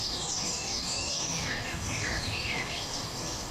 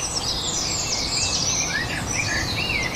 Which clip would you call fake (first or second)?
first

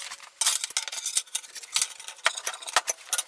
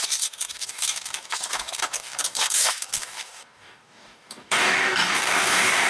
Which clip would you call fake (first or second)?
second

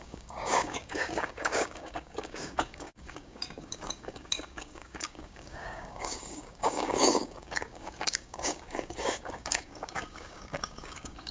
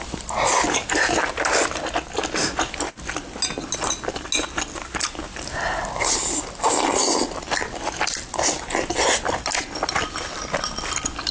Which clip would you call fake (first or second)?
first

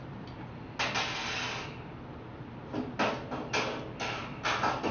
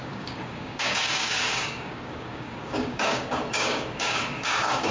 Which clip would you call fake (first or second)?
second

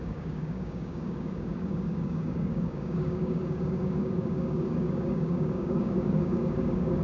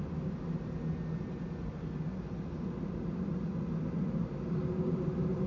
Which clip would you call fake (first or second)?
first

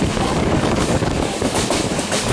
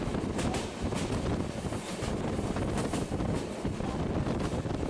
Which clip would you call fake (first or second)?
first